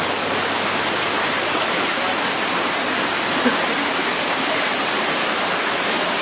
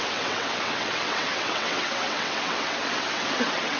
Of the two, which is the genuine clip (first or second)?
first